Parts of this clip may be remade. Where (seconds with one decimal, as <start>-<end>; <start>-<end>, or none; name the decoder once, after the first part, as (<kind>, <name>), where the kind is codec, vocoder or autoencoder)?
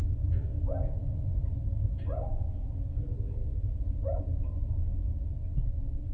none